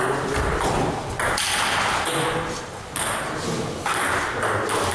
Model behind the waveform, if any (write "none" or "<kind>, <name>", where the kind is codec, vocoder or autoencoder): none